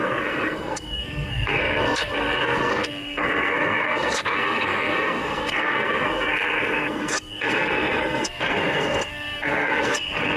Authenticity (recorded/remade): remade